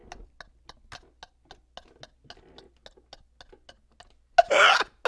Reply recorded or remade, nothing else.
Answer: recorded